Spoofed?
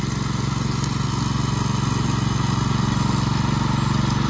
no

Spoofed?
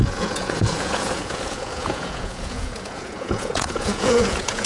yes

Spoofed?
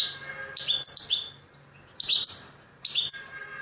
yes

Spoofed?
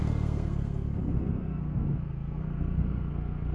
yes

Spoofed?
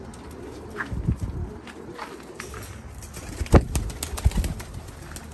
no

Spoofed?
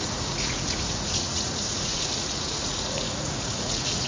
yes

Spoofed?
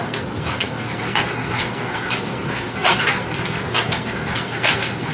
yes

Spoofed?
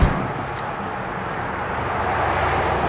no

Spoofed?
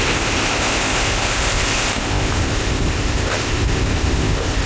yes